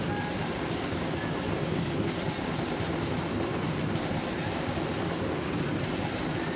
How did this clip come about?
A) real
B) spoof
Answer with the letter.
A